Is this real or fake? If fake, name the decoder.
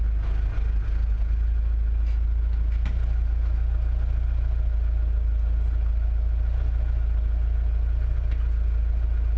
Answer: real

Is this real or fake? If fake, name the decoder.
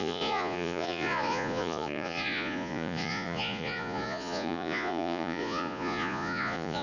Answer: fake, vocoder, Vocos